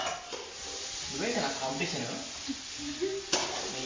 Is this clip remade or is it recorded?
recorded